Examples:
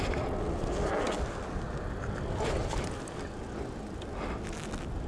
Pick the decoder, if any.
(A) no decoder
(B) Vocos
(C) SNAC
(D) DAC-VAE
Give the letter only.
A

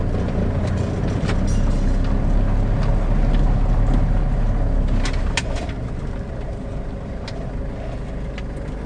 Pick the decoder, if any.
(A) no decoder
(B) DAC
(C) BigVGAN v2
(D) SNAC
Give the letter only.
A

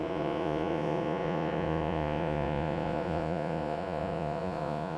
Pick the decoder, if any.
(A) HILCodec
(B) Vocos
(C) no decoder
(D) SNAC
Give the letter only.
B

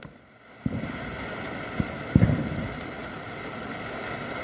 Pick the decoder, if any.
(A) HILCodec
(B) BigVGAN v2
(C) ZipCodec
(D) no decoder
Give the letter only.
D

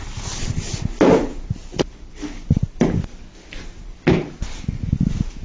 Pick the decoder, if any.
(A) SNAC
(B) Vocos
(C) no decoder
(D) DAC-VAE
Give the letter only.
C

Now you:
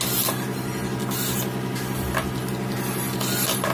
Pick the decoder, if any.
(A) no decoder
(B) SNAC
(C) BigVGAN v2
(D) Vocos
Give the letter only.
A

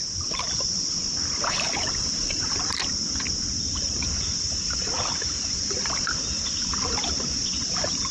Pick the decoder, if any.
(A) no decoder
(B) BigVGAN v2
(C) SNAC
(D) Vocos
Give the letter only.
B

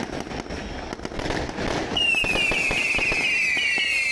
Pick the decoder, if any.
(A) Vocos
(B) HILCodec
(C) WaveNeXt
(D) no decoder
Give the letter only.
D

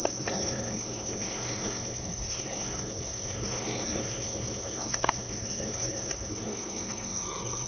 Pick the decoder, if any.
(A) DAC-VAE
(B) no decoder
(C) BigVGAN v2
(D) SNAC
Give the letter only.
D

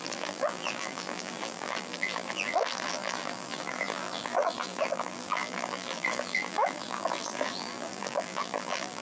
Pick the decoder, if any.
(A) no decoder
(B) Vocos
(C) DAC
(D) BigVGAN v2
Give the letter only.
D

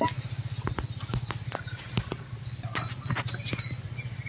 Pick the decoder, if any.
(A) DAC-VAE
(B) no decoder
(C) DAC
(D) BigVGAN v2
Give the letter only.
B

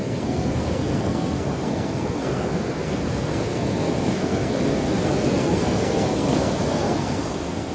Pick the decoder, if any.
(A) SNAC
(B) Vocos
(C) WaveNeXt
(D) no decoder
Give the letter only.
A